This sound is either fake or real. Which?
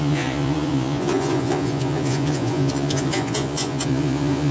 fake